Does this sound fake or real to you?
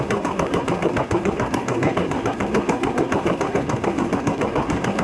fake